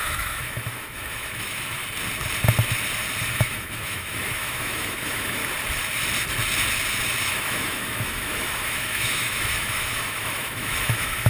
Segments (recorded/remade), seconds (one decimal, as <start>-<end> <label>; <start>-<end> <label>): 0.0-1.8 remade; 1.8-3.3 recorded; 3.3-5.4 remade; 5.4-7.2 recorded; 7.2-11.3 remade